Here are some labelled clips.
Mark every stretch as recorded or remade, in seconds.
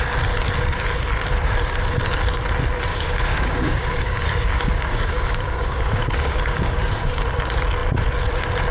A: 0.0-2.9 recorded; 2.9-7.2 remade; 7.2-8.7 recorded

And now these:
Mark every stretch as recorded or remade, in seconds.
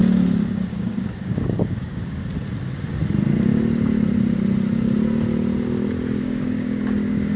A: 0.0-0.7 recorded; 0.7-2.2 remade; 2.2-6.2 recorded; 6.2-7.4 remade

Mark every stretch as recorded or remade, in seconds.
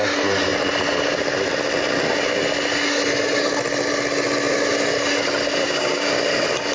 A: 0.0-5.6 recorded; 5.6-6.1 remade; 6.1-6.7 recorded